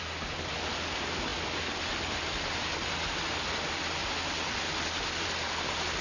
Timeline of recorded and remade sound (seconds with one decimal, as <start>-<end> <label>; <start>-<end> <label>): 0.0-6.0 recorded